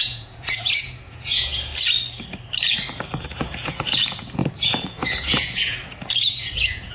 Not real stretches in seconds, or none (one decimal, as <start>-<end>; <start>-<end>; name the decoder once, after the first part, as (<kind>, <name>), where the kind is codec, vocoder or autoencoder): 0.0-1.7 (vocoder, Vocos); 2.7-6.9